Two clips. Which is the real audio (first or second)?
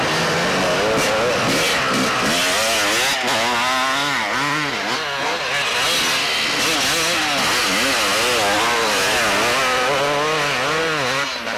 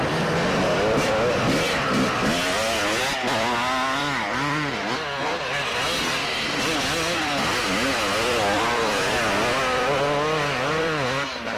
first